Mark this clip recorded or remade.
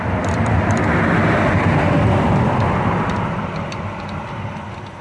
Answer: remade